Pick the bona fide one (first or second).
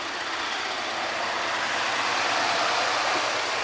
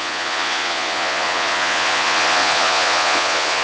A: first